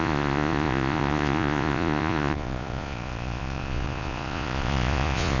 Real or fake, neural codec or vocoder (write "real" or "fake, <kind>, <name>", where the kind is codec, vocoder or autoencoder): fake, vocoder, Vocos